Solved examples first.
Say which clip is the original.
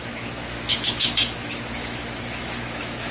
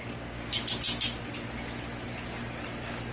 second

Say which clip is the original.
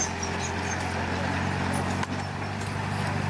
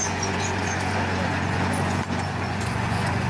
first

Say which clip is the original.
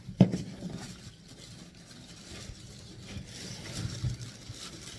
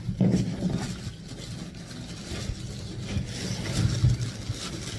second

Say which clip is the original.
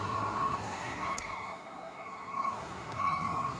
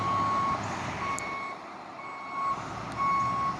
second